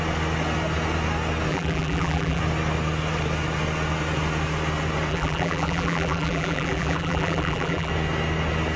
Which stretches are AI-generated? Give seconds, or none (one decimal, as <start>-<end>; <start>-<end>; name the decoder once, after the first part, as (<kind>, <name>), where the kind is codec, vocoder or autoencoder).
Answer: 1.5-2.4 (vocoder, BigVGAN v2); 5.1-7.9